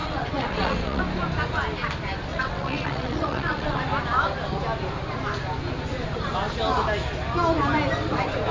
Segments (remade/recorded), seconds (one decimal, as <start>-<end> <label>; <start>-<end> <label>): 0.0-1.0 remade; 1.0-2.3 recorded; 2.3-3.8 remade; 3.8-8.5 recorded